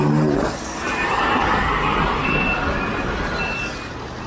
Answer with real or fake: real